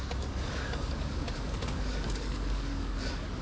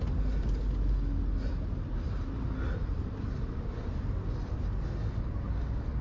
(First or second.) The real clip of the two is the second